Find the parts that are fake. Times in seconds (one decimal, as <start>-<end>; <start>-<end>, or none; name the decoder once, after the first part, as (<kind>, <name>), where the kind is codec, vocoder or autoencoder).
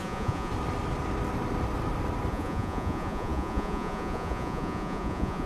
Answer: 0.0-0.5 (vocoder, Vocos); 2.3-5.5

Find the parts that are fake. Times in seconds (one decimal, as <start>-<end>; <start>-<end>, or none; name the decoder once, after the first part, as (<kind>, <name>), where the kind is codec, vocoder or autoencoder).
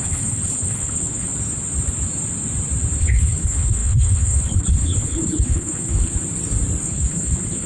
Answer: 0.0-1.3 (codec, HILCodec); 3.0-6.1; 6.8-7.7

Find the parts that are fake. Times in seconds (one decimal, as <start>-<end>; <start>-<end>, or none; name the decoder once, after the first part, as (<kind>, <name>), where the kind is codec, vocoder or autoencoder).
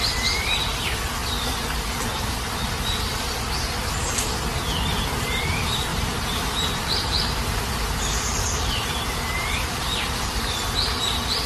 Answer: 5.9-10.4 (vocoder, BigVGAN v2)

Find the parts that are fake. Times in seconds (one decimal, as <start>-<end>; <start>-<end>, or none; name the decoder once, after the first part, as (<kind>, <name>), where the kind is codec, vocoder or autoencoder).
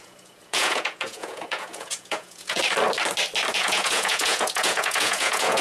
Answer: 0.0-2.6 (vocoder, Vocos); 3.5-5.6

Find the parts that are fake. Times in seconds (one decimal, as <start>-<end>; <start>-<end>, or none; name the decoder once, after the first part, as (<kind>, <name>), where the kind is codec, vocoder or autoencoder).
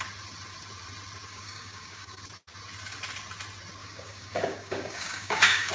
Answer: 1.3-2.2 (codec, DAC); 3.8-5.7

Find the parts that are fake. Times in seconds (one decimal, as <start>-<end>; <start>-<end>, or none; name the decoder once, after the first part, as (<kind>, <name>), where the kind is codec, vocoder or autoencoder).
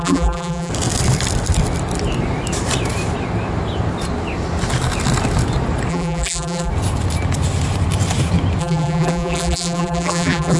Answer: 0.0-0.7 (vocoder, BigVGAN v2); 5.9-6.7; 8.6-10.6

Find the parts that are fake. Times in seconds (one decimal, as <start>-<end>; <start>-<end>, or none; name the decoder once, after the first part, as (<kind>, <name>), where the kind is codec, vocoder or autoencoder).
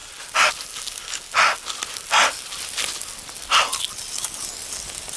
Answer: none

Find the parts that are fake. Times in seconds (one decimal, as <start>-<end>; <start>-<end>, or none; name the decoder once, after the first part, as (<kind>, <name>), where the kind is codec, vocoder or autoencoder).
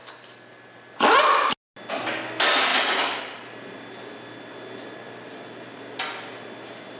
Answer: none